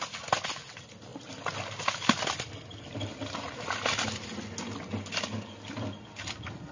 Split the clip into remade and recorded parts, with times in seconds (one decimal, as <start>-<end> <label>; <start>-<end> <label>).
0.0-6.7 recorded